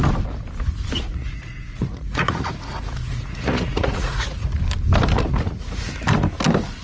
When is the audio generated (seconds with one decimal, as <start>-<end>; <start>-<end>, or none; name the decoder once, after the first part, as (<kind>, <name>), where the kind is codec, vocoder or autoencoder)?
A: 1.1-4.6 (vocoder, Vocos); 5.3-5.9

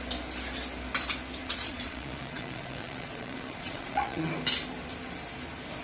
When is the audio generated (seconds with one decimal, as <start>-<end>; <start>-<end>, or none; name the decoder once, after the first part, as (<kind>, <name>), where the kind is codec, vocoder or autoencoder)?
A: 1.4-4.3 (vocoder, Vocos)

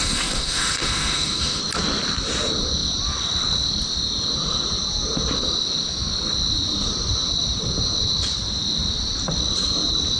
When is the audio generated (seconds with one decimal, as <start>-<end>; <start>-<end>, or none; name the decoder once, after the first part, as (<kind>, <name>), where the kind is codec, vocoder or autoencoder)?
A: 0.0-1.6 (autoencoder, DAC-VAE)

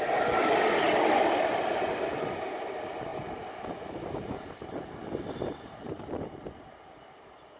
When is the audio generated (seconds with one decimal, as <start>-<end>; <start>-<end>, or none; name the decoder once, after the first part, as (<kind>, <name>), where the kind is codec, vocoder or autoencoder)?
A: 3.1-7.6 (vocoder, BigVGAN v2)

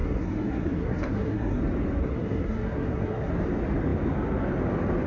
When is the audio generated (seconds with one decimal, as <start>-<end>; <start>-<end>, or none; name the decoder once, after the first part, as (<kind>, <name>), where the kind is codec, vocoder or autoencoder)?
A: 0.0-1.6 (codec, SNAC); 2.0-3.3

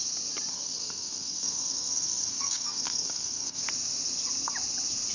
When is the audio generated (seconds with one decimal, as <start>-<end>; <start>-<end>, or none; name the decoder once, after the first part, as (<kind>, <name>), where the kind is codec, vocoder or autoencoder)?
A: 0.5-3.6 (codec, SNAC)

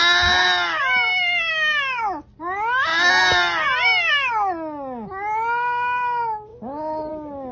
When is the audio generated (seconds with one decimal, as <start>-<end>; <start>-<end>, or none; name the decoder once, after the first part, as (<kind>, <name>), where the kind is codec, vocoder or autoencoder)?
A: none